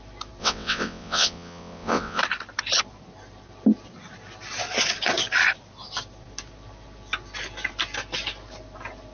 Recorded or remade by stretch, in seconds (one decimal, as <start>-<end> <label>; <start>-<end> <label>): 0.0-0.4 recorded; 0.4-2.2 remade; 2.2-9.1 recorded

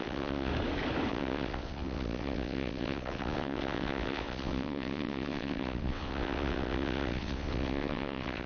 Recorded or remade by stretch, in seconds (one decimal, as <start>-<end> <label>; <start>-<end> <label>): 0.0-0.5 remade; 0.5-1.1 recorded; 1.1-8.5 remade

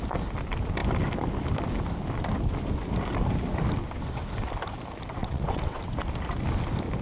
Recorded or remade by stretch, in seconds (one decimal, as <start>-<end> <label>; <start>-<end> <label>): 0.0-5.2 recorded; 5.2-5.8 remade; 5.8-7.0 recorded

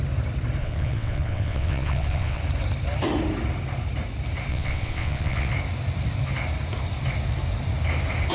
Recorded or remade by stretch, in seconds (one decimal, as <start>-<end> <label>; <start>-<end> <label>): 0.0-0.6 recorded; 0.6-2.4 remade; 2.4-4.5 recorded; 4.5-5.5 remade; 5.5-8.3 recorded

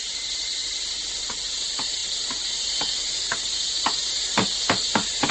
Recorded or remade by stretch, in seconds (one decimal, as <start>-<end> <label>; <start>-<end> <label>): 0.0-5.3 recorded